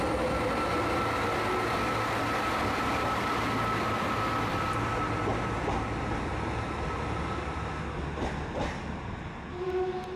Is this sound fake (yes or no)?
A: no